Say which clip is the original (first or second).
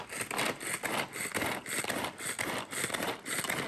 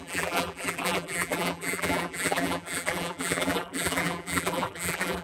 first